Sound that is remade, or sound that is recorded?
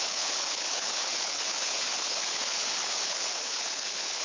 remade